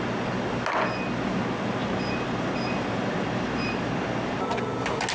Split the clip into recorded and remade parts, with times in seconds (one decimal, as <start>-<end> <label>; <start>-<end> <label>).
0.0-1.8 recorded; 1.8-3.9 remade; 3.9-5.1 recorded